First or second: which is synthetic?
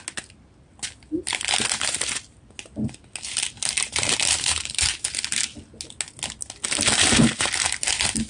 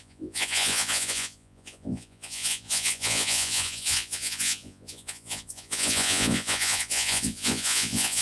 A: second